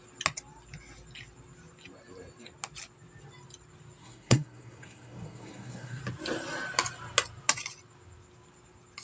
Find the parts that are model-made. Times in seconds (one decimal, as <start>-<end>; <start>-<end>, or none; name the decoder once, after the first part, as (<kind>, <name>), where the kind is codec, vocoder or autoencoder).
4.0-6.0 (codec, SNAC)